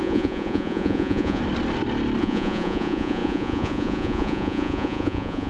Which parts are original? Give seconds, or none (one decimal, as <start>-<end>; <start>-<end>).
1.4-2.2